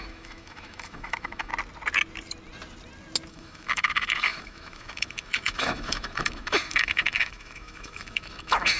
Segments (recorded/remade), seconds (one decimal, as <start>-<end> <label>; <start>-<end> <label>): 0.0-1.5 remade; 1.5-3.3 recorded; 3.3-8.8 remade